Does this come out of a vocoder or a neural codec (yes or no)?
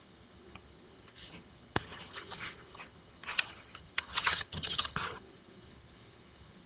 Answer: yes